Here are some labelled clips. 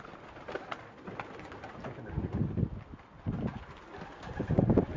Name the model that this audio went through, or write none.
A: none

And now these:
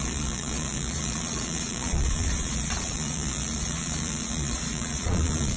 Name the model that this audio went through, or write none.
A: vocoder, Vocos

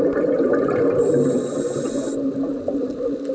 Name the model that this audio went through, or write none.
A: none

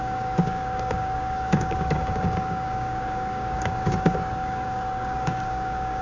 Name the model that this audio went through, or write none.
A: codec, DAC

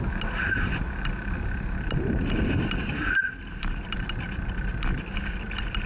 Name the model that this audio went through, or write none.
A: none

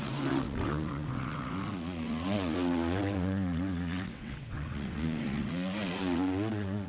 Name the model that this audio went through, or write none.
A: vocoder, WaveNeXt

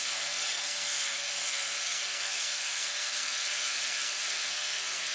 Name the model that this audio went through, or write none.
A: codec, SNAC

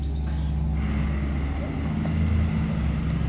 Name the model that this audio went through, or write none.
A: none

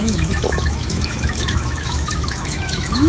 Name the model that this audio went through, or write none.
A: autoencoder, DAC-VAE